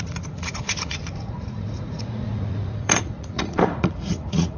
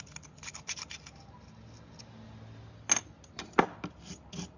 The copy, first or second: first